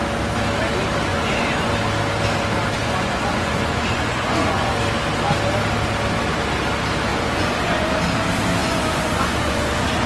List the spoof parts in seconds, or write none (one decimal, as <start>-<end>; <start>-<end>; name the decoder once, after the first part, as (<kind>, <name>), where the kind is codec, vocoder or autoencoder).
1.1-1.7 (vocoder, Vocos); 2.8-4.7; 7.1-7.9; 8.6-10.1